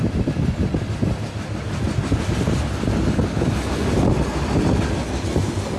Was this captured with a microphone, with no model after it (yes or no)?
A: yes